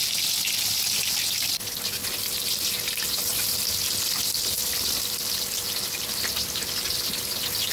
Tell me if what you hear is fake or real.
real